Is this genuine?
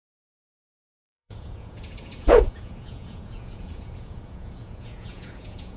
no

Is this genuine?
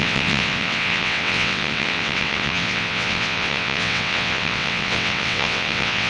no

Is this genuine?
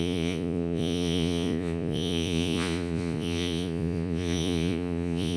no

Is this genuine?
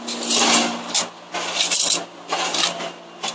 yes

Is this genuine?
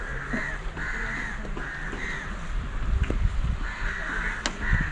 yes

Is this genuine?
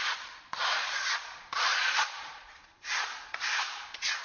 no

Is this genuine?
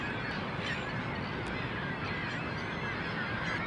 yes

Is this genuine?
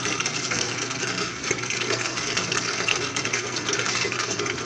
no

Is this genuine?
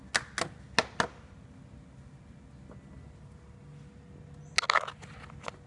yes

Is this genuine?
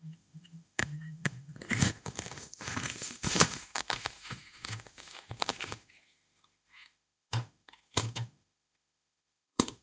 no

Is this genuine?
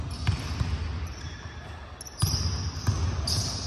yes